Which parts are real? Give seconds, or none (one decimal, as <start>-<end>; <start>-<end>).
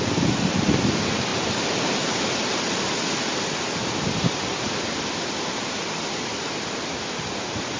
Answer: 0.0-7.8